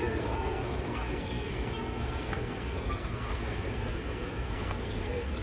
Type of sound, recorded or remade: remade